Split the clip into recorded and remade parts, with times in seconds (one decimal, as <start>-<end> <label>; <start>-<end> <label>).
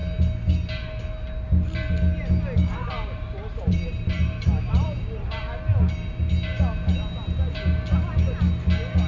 0.0-2.7 recorded; 2.7-5.4 remade; 5.4-9.1 recorded